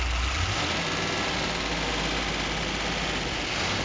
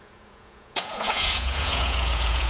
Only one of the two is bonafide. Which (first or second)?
first